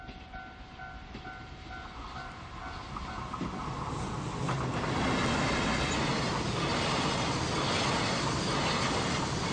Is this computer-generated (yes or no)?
no